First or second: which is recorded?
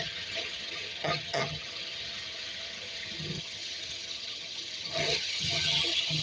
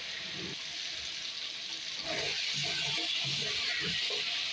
second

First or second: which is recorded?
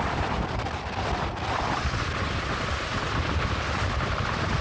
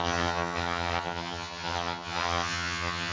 first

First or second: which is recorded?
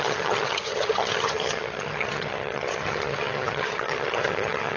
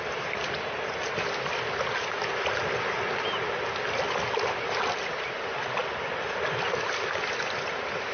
second